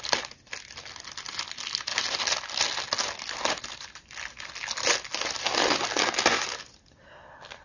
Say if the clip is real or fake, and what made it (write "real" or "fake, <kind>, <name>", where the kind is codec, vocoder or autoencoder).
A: real